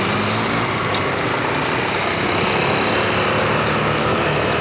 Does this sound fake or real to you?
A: real